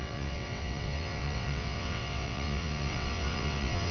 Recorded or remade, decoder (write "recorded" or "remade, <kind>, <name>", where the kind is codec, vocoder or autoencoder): remade, vocoder, WaveNeXt